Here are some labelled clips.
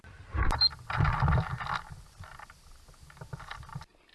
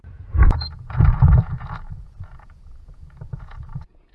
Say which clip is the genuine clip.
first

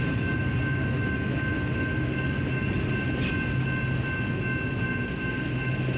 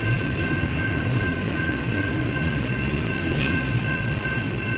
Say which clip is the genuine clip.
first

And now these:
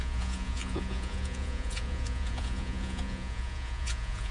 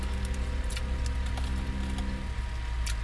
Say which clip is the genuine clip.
second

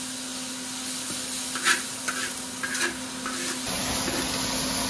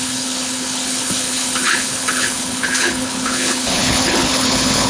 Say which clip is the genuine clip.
first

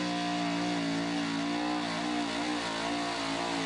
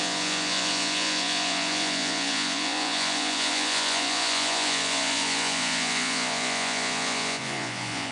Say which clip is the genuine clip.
first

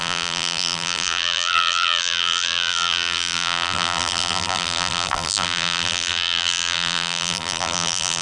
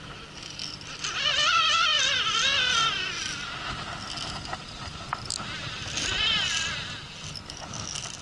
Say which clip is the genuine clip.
second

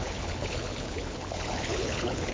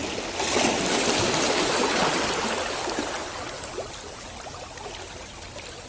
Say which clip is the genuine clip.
second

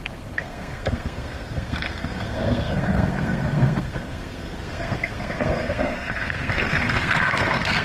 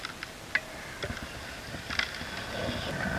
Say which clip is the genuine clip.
second